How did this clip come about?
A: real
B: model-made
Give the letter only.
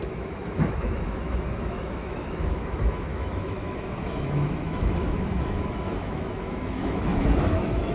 B